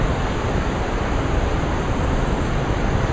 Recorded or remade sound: remade